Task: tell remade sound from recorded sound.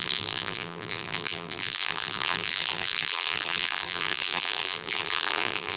remade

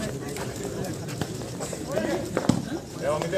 remade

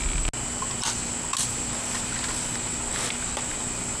recorded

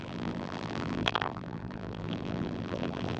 remade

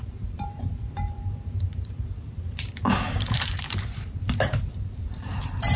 remade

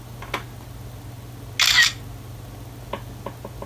recorded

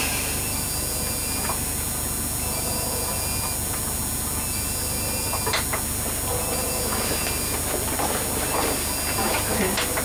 recorded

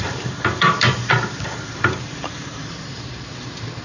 remade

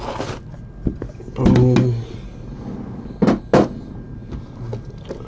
recorded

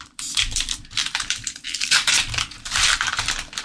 remade